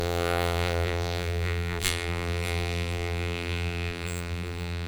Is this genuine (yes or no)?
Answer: no